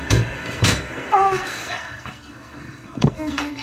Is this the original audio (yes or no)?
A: no